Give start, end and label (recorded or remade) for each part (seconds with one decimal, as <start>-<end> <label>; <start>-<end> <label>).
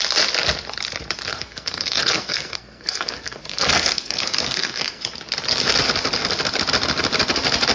0.0-1.3 recorded; 1.3-5.0 remade; 5.0-7.7 recorded